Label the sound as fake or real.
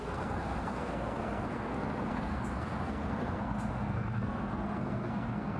fake